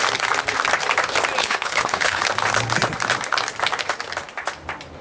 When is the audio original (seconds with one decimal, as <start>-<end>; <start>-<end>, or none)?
0.0-1.4; 2.2-5.0

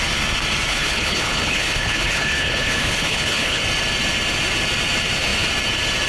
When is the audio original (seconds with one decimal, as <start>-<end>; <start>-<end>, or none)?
0.0-0.7; 3.6-6.1

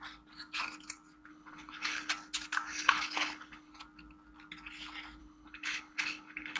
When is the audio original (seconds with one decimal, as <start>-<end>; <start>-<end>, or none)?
0.0-1.3; 2.1-2.7; 3.7-5.2

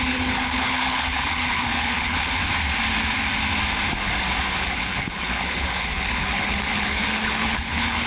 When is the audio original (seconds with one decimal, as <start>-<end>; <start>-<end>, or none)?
2.4-4.5

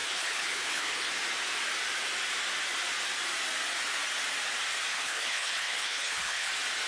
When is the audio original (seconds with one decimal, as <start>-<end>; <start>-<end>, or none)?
1.1-4.9; 6.5-6.9

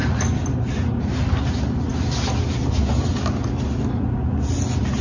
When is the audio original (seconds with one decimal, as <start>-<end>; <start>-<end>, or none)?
0.0-5.0